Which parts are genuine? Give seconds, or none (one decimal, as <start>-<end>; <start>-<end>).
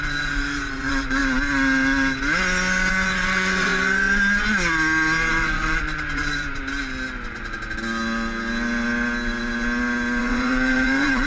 1.2-2.9; 3.7-5.3; 6.6-10.2